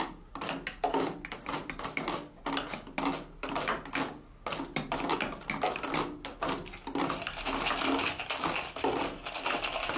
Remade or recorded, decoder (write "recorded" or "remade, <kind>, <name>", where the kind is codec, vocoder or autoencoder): recorded